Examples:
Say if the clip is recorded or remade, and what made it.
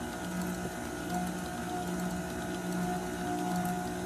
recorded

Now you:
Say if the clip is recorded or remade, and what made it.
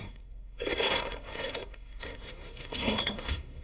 remade, codec, SNAC